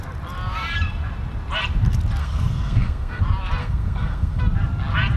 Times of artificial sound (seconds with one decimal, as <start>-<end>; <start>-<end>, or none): 2.2-3.2; 3.6-4.4